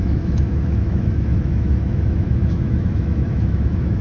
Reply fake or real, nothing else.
fake